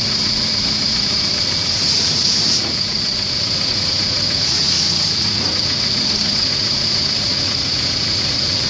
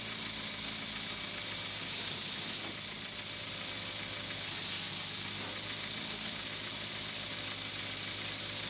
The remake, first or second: first